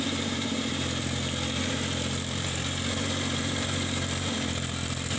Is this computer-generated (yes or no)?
yes